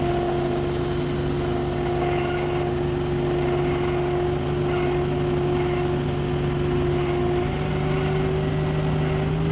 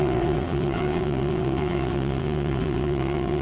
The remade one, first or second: second